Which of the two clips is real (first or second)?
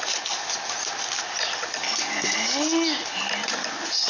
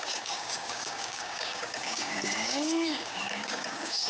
first